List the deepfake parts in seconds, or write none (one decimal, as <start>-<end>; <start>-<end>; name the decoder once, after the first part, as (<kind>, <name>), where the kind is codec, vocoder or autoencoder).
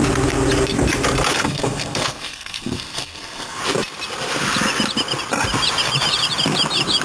1.3-3.6 (codec, SNAC)